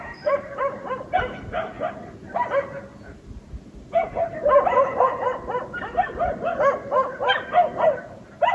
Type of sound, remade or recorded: recorded